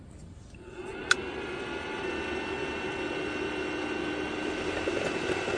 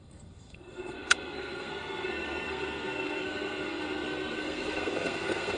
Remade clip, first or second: second